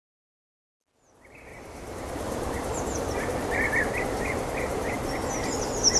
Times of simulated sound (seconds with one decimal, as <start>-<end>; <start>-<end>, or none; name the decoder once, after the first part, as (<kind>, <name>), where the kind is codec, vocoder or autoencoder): 1.5-5.1 (vocoder, BigVGAN v2)